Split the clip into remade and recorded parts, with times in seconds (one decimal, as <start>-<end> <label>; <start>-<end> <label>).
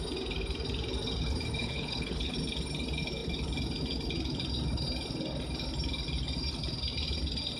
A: 0.0-1.6 recorded; 1.6-2.3 remade; 2.3-7.6 recorded